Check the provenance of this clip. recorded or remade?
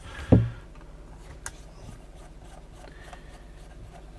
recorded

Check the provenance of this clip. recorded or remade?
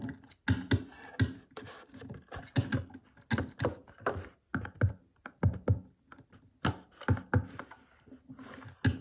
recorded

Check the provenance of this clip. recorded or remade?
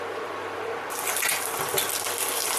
recorded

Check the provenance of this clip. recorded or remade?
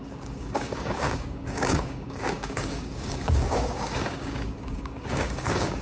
remade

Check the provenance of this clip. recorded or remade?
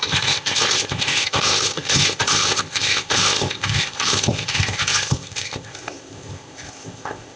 remade